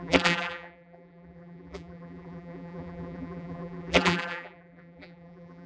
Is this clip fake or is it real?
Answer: fake